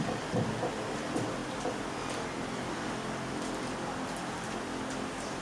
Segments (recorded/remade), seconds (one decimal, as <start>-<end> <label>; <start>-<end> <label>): 0.0-5.4 recorded